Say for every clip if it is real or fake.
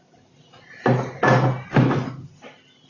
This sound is real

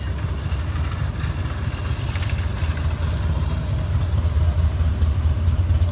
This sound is real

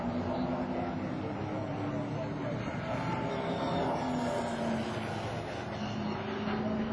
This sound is real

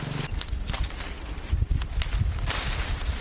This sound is real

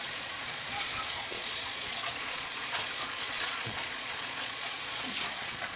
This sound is fake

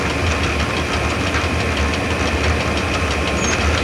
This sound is real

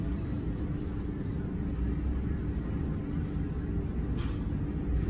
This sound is real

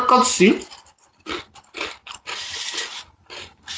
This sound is real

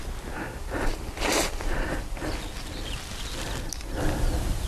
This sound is real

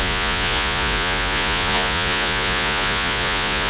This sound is fake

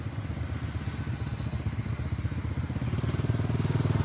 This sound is real